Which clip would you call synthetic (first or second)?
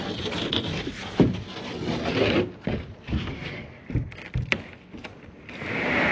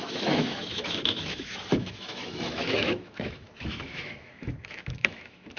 second